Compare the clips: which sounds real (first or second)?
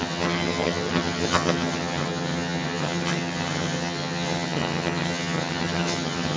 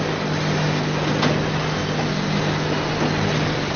second